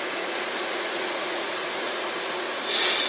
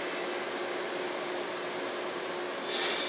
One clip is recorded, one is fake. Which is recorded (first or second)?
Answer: second